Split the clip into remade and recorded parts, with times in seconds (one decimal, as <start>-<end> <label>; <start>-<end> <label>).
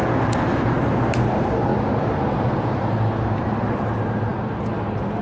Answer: 0.0-5.2 recorded